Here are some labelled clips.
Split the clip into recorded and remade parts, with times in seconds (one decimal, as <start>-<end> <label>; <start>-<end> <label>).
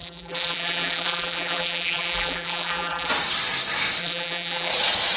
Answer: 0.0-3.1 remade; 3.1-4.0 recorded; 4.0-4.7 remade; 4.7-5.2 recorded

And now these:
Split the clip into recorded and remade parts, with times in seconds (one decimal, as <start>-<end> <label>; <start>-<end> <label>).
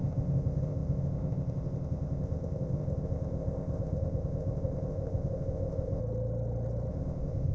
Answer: 0.0-6.0 remade; 6.0-6.9 recorded; 6.9-7.5 remade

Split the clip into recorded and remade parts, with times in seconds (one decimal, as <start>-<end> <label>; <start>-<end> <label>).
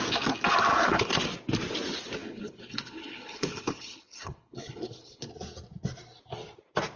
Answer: 0.0-0.7 recorded; 0.7-1.2 remade; 1.2-2.2 recorded; 2.2-5.3 remade; 5.3-7.0 recorded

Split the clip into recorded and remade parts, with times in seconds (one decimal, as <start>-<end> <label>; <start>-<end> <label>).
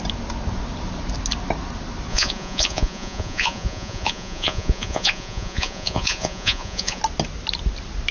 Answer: 0.0-2.1 recorded; 2.1-7.0 remade; 7.0-8.1 recorded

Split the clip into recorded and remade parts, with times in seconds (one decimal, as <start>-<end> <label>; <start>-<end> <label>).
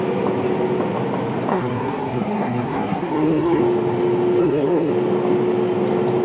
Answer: 0.0-1.5 recorded; 1.5-3.6 remade; 3.6-4.4 recorded; 4.4-4.9 remade; 4.9-6.2 recorded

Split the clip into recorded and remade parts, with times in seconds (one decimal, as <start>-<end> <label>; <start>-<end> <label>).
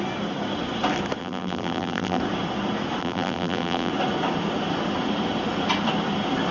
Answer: 0.0-1.2 recorded; 1.2-2.2 remade; 2.2-3.0 recorded; 3.0-3.9 remade; 3.9-6.5 recorded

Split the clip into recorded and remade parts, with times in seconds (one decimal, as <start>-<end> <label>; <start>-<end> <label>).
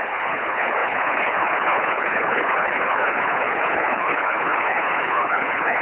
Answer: 0.0-5.8 remade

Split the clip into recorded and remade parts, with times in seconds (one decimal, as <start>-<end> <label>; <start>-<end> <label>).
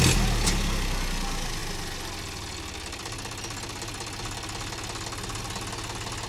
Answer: 0.0-6.3 recorded